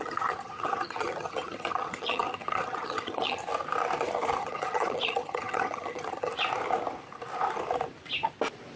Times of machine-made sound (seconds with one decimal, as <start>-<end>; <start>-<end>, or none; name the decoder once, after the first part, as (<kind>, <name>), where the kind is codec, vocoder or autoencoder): 0.0-3.4 (vocoder, HiFi-GAN); 4.4-6.3